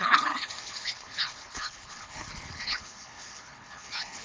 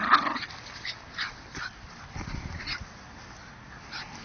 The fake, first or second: first